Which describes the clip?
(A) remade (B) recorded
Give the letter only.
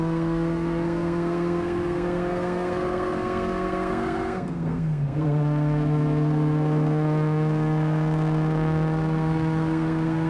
A